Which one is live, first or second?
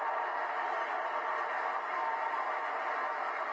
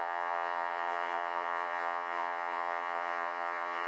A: first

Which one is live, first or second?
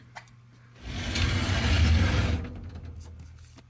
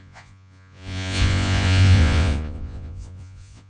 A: first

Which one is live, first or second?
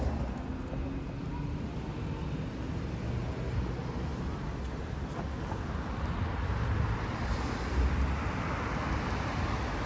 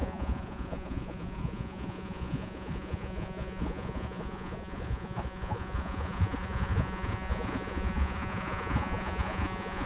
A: first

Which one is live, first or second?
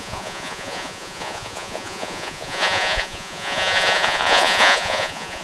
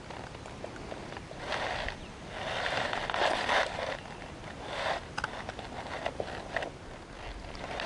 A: second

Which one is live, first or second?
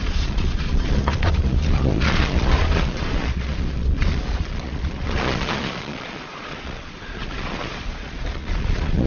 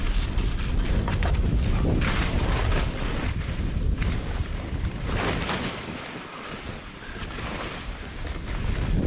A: second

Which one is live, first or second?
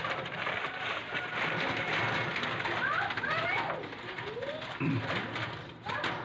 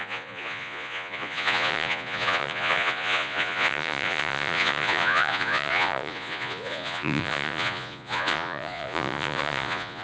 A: first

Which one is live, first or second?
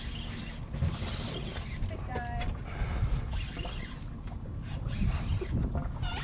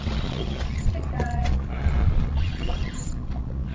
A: first